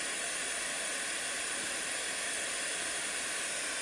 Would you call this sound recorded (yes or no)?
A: yes